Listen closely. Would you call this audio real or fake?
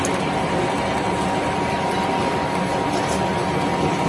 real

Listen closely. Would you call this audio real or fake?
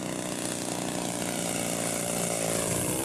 real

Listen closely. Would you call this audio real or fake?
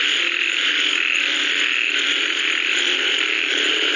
real